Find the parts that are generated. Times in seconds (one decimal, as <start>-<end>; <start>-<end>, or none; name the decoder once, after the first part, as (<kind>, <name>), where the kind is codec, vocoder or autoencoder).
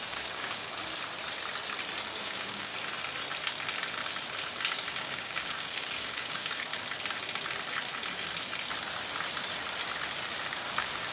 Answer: 0.0-0.8 (codec, DAC); 2.2-2.7; 5.0-6.7; 10.4-11.1